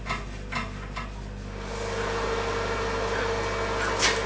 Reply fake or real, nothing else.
real